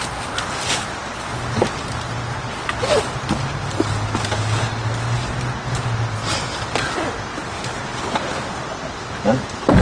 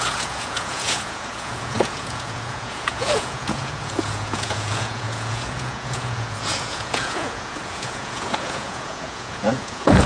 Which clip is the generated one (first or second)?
second